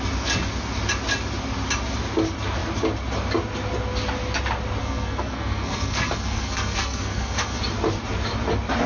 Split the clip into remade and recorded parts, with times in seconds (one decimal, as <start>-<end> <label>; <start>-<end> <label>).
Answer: 0.0-4.8 recorded; 4.8-7.6 remade; 7.6-8.9 recorded